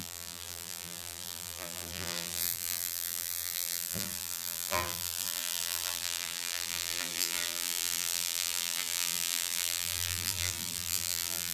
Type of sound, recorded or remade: remade